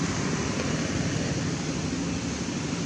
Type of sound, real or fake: real